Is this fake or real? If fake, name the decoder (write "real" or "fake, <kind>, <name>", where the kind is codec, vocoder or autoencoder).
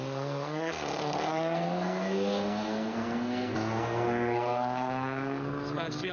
fake, codec, SNAC